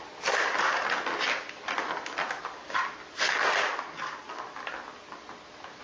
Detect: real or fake real